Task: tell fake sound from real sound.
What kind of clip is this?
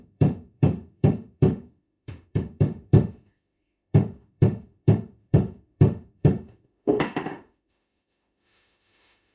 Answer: fake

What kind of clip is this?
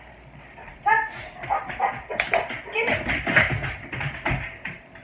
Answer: real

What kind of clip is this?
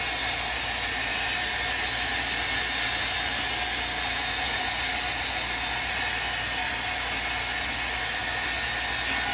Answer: real